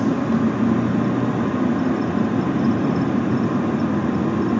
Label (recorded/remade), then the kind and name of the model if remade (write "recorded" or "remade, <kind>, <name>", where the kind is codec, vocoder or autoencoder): recorded